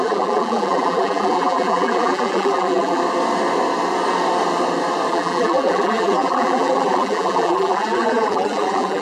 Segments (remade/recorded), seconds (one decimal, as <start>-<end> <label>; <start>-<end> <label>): 0.0-3.0 remade; 3.0-5.1 recorded; 5.1-9.0 remade